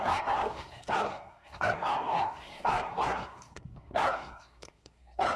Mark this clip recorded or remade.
remade